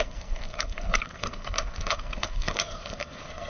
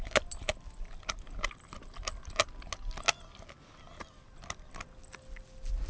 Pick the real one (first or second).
second